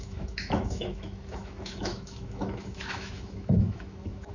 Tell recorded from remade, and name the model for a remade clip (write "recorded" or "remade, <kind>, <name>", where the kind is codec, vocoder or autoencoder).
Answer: remade, autoencoder, DAC-VAE